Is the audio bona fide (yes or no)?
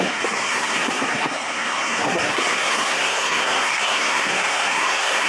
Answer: no